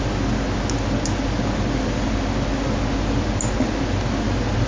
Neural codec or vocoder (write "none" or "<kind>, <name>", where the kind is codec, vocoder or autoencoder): none